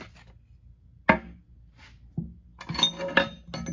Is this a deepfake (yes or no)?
no